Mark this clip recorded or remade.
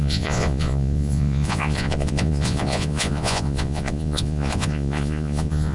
remade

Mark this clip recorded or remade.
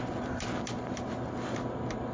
recorded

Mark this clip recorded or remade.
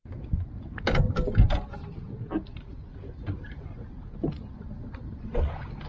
recorded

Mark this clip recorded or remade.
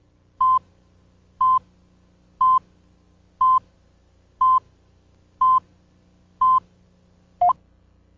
recorded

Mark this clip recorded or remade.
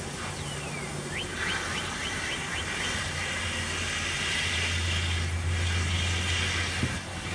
recorded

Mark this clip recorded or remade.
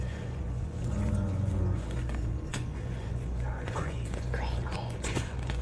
remade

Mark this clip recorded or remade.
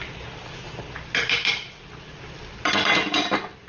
recorded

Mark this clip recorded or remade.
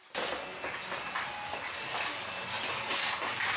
recorded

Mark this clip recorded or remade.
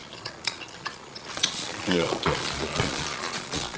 remade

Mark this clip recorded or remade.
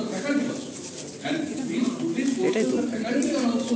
recorded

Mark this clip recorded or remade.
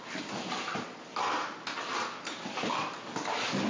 recorded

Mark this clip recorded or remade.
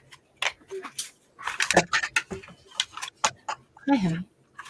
recorded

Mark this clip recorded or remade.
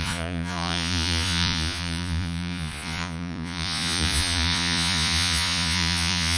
remade